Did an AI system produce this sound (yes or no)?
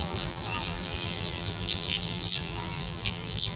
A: yes